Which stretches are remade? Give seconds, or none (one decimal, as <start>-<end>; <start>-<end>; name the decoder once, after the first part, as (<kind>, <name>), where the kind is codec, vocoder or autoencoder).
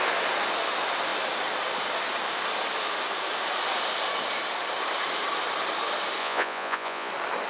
6.2-7.1 (vocoder, Vocos)